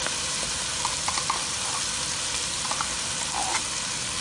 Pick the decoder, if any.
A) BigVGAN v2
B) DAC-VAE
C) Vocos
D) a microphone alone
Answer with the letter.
D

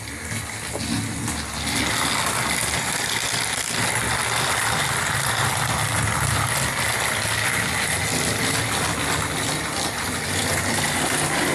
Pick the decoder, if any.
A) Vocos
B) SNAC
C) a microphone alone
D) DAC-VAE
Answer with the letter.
C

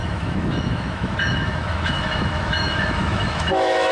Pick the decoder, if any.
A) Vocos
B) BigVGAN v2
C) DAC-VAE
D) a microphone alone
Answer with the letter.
C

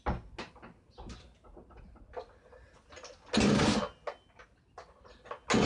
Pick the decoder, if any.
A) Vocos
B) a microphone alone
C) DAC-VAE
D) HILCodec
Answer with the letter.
B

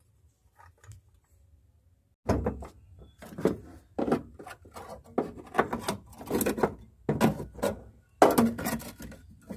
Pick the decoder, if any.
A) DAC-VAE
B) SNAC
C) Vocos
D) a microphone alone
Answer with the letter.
D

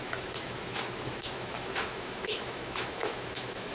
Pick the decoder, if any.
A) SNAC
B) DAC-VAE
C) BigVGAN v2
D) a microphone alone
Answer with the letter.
B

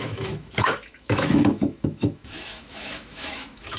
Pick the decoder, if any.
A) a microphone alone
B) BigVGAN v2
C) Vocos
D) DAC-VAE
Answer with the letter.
D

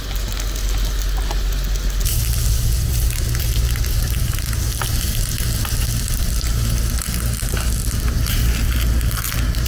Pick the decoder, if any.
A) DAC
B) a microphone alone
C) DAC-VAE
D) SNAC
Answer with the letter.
B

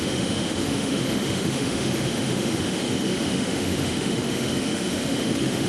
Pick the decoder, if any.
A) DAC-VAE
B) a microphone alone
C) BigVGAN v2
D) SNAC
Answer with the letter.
A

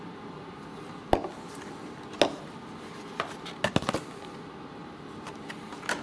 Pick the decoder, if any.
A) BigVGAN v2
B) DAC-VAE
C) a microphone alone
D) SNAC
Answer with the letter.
C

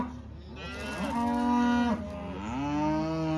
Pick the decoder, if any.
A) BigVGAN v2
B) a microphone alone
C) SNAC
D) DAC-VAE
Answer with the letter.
B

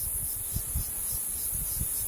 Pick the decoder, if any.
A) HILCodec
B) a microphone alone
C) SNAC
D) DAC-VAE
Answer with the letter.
B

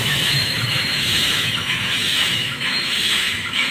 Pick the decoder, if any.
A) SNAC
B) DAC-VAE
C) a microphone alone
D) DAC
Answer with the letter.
B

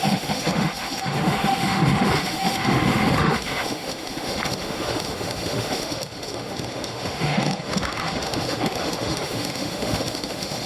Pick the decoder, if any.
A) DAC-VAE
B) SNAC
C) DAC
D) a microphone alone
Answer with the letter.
A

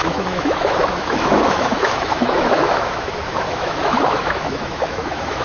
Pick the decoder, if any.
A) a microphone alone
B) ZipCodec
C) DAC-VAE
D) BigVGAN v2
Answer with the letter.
C